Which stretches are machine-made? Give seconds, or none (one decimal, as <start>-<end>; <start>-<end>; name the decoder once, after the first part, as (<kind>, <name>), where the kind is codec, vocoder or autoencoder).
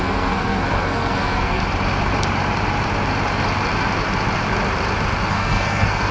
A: 0.0-1.6 (codec, SNAC); 5.3-6.1